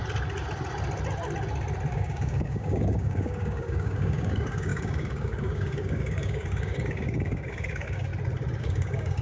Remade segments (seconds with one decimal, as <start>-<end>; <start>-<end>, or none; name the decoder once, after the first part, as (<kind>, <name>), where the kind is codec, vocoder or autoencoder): 1.9-8.1 (codec, DAC); 8.6-9.2